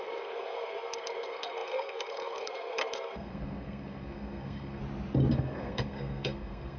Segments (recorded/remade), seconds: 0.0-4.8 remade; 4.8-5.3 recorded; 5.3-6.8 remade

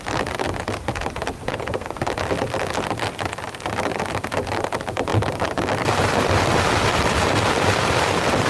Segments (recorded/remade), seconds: 0.0-1.5 recorded; 1.5-2.0 remade; 2.0-8.5 recorded

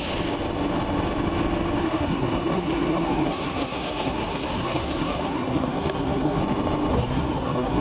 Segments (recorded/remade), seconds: 0.0-1.8 recorded; 1.8-6.4 remade; 6.4-6.9 recorded; 6.9-7.8 remade

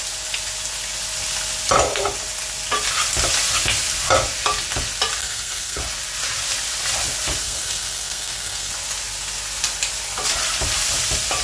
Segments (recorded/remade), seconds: 0.0-5.2 recorded; 5.2-5.8 remade; 5.8-7.4 recorded; 7.4-8.7 remade; 8.7-11.4 recorded